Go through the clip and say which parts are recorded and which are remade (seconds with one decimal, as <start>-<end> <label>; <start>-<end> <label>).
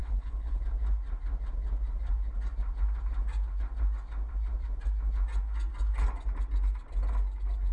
0.0-0.6 remade; 0.6-7.7 recorded